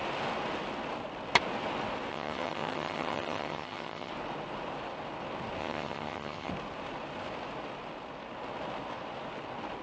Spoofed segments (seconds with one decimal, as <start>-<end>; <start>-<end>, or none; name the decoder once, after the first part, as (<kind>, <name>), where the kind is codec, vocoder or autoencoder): 2.1-4.1 (vocoder, HiFi-GAN); 5.6-6.5